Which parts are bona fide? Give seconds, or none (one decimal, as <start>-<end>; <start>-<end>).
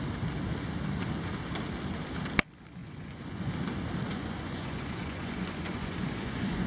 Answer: 0.0-2.8; 3.5-4.1